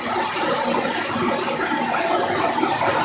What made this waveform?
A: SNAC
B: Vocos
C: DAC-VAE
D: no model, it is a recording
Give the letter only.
D